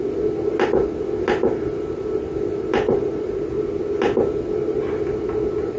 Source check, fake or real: real